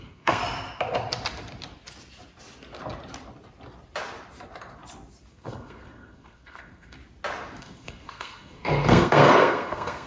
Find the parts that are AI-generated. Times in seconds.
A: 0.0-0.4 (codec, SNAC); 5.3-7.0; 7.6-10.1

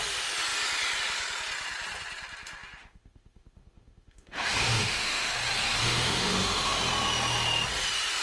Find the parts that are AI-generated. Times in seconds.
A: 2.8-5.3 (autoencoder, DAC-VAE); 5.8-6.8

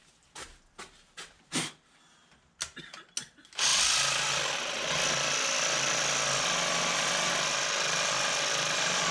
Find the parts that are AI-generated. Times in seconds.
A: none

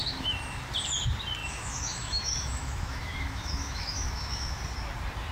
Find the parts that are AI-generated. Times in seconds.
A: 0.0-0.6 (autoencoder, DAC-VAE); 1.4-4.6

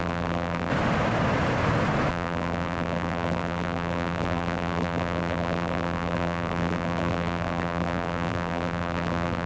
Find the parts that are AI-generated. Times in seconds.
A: 0.0-0.7 (vocoder, BigVGAN v2); 2.1-9.5

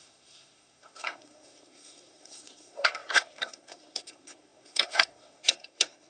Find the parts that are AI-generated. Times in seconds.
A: 0.0-6.1 (codec, SNAC)